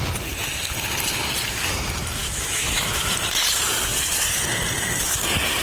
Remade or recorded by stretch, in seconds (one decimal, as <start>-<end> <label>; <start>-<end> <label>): 0.0-2.2 recorded; 2.2-3.1 remade; 3.1-5.6 recorded

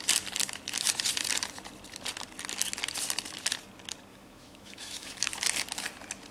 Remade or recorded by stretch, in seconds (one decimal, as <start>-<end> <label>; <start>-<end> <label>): 0.0-4.1 recorded; 4.1-5.3 remade; 5.3-6.3 recorded

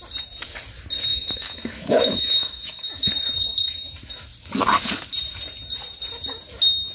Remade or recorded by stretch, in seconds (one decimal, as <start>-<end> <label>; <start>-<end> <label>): 0.0-1.1 recorded; 1.1-3.1 remade; 3.1-6.9 recorded